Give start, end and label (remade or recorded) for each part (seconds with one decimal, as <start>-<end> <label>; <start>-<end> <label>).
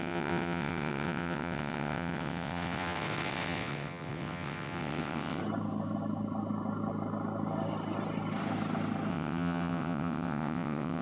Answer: 0.0-5.4 remade; 5.4-9.1 recorded; 9.1-11.0 remade